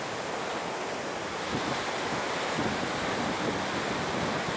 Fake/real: real